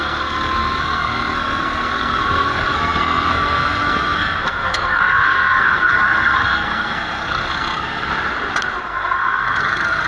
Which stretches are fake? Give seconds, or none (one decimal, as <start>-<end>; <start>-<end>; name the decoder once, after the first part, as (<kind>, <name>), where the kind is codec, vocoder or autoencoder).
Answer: 0.0-8.1 (codec, SNAC); 8.8-10.1